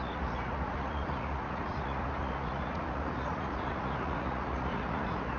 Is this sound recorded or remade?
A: remade